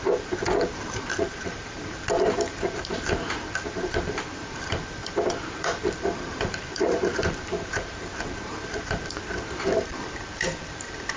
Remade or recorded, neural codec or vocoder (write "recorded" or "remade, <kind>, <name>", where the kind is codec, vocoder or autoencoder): remade, vocoder, BigVGAN v2